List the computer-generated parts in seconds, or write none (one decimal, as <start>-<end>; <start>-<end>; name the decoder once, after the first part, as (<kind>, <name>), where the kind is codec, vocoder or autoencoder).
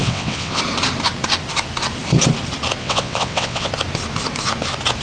0.0-0.6 (vocoder, WaveNeXt); 2.8-3.7